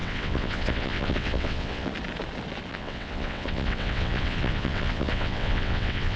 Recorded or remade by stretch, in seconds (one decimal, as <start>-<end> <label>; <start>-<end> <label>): 0.0-1.9 remade; 1.9-2.7 recorded; 2.7-6.2 remade